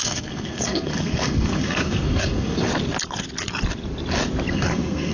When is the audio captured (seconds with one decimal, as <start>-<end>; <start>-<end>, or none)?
2.7-4.5